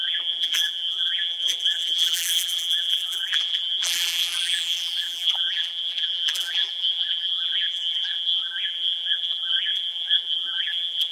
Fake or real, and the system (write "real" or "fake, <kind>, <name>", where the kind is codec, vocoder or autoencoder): fake, vocoder, BigVGAN v2